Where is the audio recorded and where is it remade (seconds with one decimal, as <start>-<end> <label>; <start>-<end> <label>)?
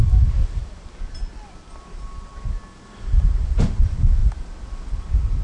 0.0-0.6 recorded; 0.6-1.7 remade; 1.7-5.4 recorded